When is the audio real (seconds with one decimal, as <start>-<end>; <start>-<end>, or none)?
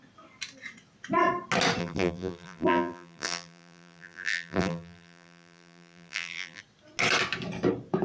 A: 0.0-1.8; 6.6-8.0